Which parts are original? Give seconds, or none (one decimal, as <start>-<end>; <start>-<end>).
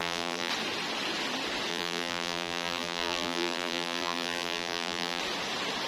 0.5-1.7; 5.2-5.9